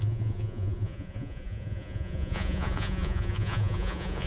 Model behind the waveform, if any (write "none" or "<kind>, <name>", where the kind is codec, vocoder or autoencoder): vocoder, Vocos